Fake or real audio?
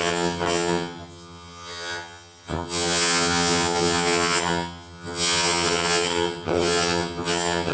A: fake